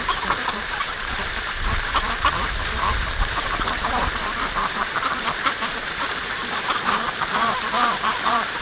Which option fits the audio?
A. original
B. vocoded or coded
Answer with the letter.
B